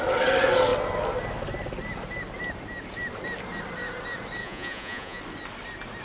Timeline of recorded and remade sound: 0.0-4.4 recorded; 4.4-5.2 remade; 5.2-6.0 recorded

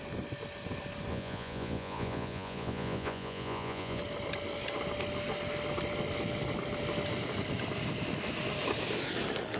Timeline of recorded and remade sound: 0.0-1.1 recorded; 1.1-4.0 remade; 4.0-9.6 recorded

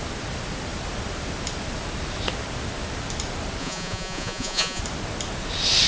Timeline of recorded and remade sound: 0.0-3.6 recorded; 3.6-4.8 remade; 4.8-5.9 recorded